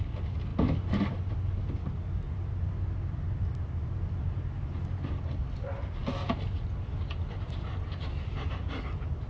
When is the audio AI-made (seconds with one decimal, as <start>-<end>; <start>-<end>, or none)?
none